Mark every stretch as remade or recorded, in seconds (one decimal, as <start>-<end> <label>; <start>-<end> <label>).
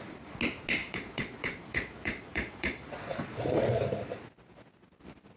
0.0-0.8 recorded; 0.8-3.8 remade; 3.8-5.4 recorded